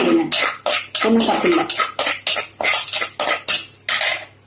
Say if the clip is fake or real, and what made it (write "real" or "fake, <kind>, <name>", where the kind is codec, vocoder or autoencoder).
real